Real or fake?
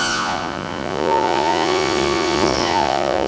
fake